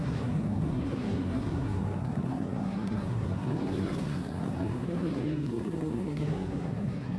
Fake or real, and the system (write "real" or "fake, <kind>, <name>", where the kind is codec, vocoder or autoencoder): fake, codec, SNAC